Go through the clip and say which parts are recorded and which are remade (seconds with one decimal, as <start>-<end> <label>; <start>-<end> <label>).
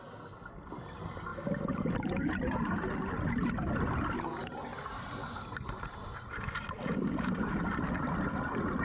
0.0-8.8 recorded